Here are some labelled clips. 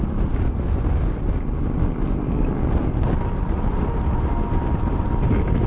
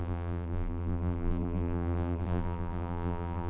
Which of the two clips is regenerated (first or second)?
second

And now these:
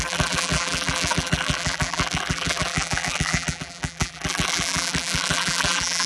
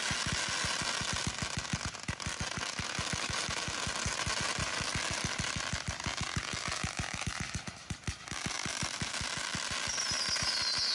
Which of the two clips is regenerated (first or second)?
first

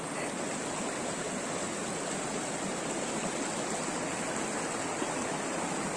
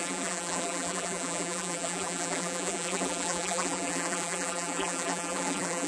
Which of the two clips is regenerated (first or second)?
second